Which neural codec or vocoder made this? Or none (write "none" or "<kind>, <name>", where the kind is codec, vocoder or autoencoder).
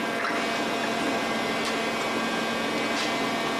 none